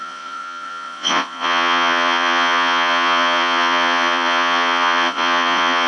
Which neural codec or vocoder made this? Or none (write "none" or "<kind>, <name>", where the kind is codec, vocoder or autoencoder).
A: vocoder, Vocos